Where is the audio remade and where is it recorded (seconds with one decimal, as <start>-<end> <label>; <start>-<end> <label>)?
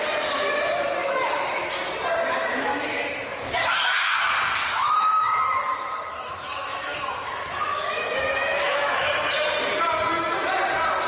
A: 0.0-1.0 recorded; 1.0-1.7 remade; 1.7-2.1 recorded; 2.1-4.3 remade; 4.3-4.7 recorded; 4.7-9.1 remade; 9.1-11.1 recorded